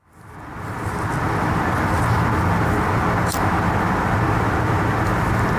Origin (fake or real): real